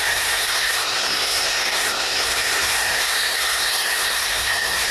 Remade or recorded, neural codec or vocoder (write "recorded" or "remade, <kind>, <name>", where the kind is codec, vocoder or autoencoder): remade, codec, SNAC